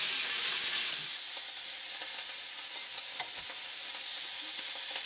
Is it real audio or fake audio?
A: real